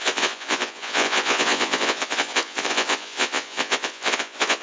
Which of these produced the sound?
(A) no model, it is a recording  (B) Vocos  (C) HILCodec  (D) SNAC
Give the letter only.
B